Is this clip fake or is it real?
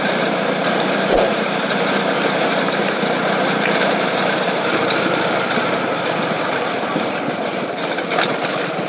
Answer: fake